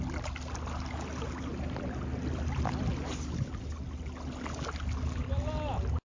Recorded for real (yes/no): yes